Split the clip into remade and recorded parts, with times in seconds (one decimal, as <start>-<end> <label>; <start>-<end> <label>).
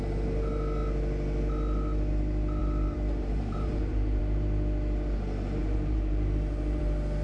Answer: 0.0-2.6 recorded; 2.6-4.2 remade; 4.2-5.6 recorded; 5.6-6.8 remade; 6.8-7.2 recorded